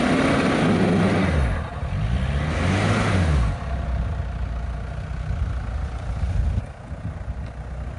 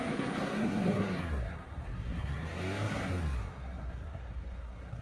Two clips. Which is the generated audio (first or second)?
second